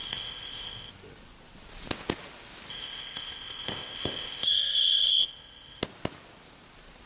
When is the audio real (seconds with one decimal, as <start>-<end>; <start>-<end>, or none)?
0.9-2.7; 5.8-7.1